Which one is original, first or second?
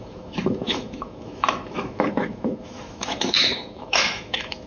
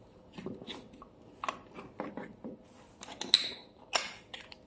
second